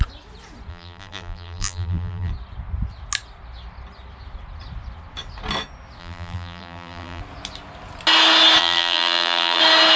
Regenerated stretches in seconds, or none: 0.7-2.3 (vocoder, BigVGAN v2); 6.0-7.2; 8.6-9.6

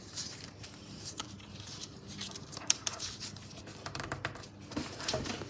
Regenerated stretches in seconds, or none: 0.0-5.5 (vocoder, BigVGAN v2)

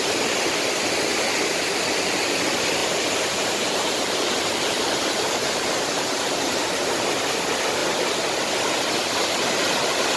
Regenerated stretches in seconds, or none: 2.8-7.1 (vocoder, BigVGAN v2)

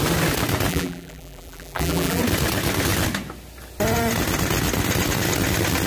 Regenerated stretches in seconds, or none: 0.7-2.2 (vocoder, BigVGAN v2)